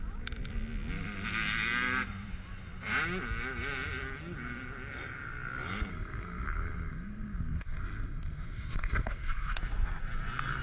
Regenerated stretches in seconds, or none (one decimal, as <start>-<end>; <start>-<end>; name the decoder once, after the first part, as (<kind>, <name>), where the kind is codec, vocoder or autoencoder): 5.9-9.6 (codec, SNAC)